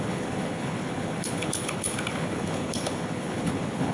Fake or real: fake